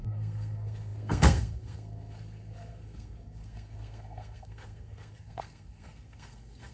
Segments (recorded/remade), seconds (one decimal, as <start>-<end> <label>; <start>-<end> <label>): 0.0-6.7 remade